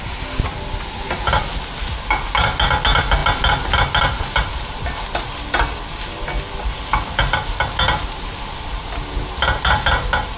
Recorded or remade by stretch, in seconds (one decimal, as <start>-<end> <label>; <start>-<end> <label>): 0.0-10.4 recorded

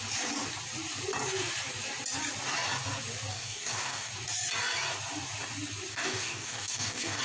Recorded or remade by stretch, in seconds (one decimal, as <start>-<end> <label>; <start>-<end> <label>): 0.0-3.3 recorded; 3.3-4.1 remade; 4.1-5.9 recorded; 5.9-7.2 remade

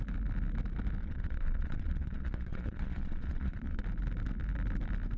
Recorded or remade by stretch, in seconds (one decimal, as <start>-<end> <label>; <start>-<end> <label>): 0.0-1.0 recorded; 1.0-3.8 remade; 3.8-5.2 recorded

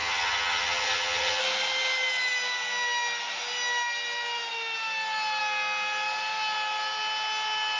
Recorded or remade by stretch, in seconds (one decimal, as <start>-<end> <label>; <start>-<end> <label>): 0.0-1.4 remade; 1.4-7.8 recorded

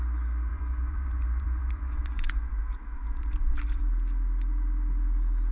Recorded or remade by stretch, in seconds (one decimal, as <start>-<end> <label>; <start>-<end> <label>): 0.0-0.5 recorded; 0.5-3.8 remade; 3.8-5.5 recorded

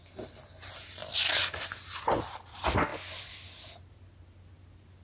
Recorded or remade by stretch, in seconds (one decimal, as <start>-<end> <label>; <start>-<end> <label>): 0.0-5.0 recorded